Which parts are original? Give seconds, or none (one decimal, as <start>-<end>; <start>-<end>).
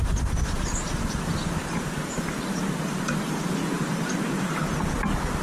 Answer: 0.0-5.4